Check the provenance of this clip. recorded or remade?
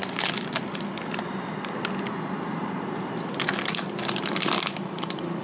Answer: recorded